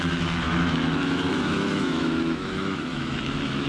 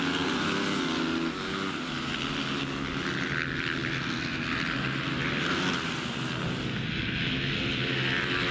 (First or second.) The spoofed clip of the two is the first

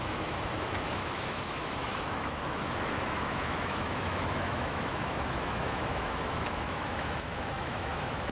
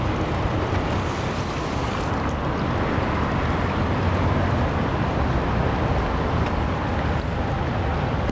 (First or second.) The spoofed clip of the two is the first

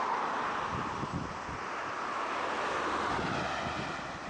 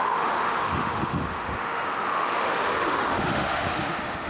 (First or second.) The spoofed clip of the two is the second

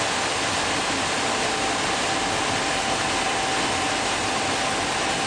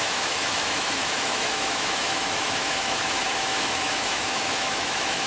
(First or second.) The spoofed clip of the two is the second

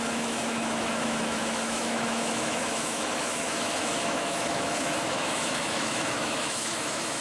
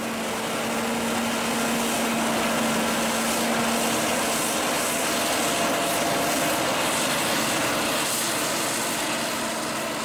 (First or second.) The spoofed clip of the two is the first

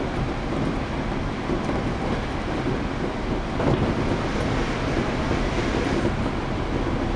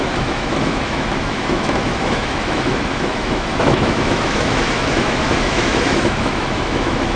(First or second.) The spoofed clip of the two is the second